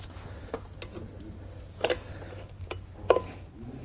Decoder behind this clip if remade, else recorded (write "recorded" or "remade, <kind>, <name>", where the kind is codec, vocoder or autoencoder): recorded